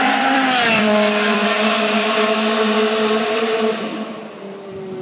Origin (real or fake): fake